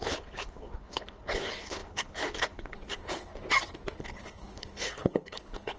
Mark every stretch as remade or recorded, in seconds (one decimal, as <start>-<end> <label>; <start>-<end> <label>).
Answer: 0.0-3.3 remade; 3.3-4.0 recorded; 4.0-5.8 remade